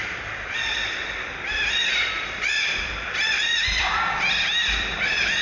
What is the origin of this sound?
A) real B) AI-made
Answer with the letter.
B